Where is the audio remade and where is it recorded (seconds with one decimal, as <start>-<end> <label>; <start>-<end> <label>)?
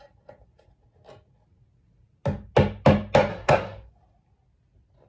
0.0-3.3 recorded; 3.3-3.9 remade; 3.9-5.1 recorded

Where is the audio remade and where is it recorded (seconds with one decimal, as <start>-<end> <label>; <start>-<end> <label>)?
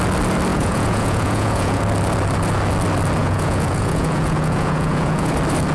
0.0-0.5 recorded; 0.5-1.8 remade; 1.8-3.2 recorded; 3.2-5.3 remade; 5.3-5.7 recorded